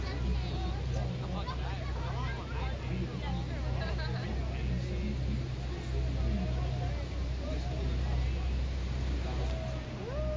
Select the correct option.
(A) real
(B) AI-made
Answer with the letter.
A